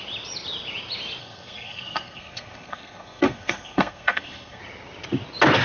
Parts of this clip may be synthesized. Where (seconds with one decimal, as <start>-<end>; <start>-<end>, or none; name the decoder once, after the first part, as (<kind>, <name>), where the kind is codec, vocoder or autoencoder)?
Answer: 1.2-4.6 (codec, SNAC)